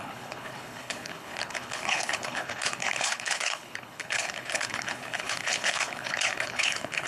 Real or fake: fake